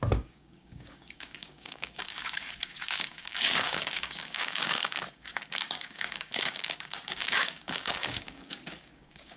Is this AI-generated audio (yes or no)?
yes